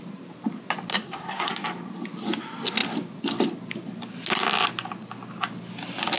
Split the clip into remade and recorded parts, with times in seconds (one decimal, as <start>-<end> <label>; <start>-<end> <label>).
0.0-0.9 recorded; 0.9-1.5 remade; 1.5-6.2 recorded